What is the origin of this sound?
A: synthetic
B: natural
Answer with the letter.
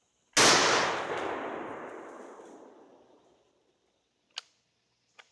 B